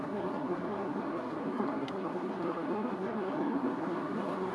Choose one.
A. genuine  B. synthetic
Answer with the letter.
B